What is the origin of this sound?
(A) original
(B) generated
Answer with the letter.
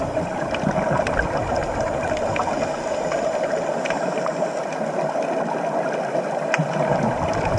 A